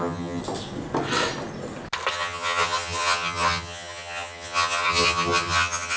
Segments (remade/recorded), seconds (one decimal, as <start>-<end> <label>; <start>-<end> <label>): 0.0-0.4 remade; 0.4-2.1 recorded; 2.1-6.0 remade